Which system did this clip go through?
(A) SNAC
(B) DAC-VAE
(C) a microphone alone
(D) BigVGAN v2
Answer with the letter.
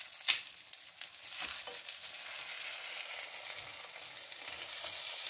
C